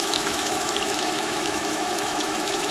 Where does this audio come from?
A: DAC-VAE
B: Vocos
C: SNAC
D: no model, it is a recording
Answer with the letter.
A